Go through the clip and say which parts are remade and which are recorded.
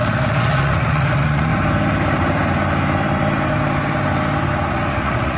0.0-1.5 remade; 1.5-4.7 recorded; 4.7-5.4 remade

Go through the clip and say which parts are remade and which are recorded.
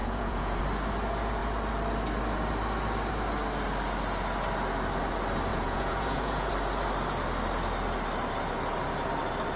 0.0-0.6 remade; 0.6-5.5 recorded; 5.5-6.5 remade; 6.5-9.6 recorded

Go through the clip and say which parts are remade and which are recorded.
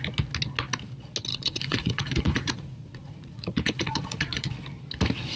0.0-1.3 recorded; 1.3-4.5 remade; 4.5-5.4 recorded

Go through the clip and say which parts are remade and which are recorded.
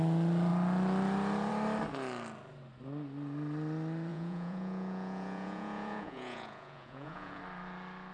0.0-4.1 recorded; 4.1-7.4 remade; 7.4-8.1 recorded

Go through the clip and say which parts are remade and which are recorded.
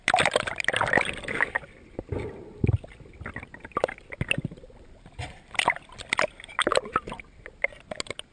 0.0-8.3 recorded